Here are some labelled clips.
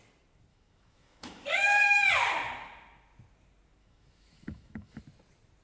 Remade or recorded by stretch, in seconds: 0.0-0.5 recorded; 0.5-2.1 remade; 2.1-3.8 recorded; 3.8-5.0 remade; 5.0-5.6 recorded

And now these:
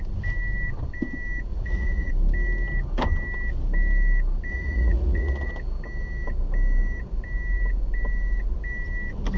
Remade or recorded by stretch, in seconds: 0.0-1.5 recorded; 1.5-2.1 remade; 2.1-4.5 recorded; 4.5-5.5 remade; 5.5-9.4 recorded

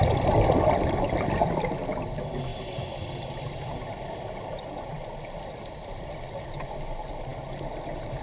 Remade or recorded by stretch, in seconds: 0.0-0.6 remade; 0.6-2.5 recorded; 2.5-6.7 remade; 6.7-8.2 recorded